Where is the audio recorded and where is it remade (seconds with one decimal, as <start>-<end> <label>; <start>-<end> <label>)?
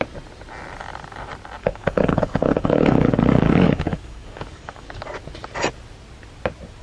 0.0-1.6 recorded; 1.6-5.2 remade; 5.2-6.8 recorded